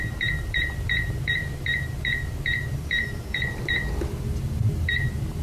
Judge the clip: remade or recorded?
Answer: remade